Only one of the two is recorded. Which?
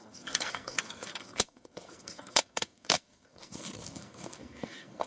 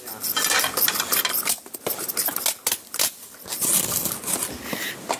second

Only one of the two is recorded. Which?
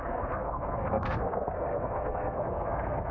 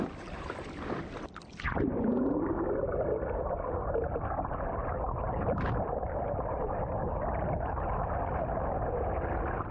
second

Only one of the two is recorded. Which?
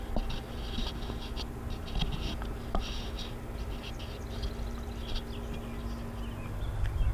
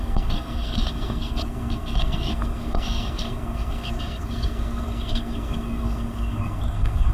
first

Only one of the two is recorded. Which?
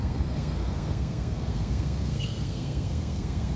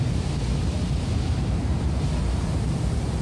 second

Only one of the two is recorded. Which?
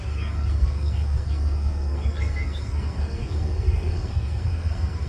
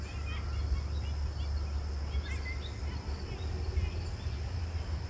second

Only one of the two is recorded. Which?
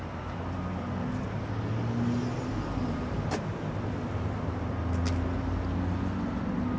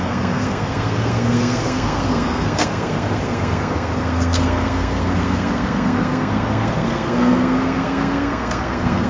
first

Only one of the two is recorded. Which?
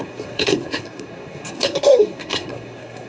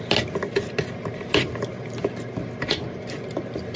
second